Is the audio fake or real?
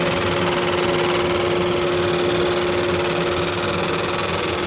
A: real